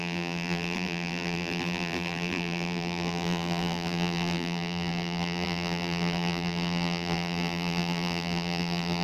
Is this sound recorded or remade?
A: remade